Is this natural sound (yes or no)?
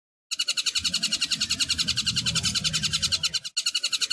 yes